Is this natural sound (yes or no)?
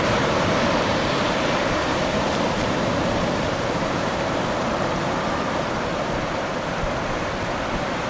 no